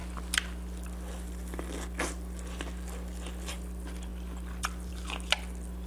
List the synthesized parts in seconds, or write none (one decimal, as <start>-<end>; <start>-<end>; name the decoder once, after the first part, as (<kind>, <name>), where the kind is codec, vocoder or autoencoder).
none